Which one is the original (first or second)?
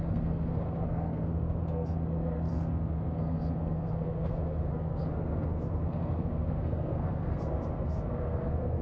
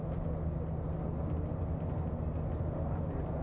second